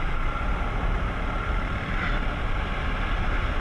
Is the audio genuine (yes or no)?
yes